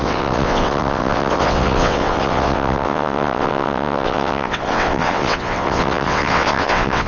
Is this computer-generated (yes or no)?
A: yes